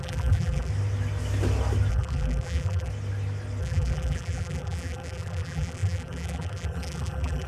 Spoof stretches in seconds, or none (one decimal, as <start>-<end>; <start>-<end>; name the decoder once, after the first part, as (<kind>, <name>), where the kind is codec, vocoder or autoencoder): 0.0-0.7 (vocoder, BigVGAN v2); 1.9-2.9; 3.6-7.5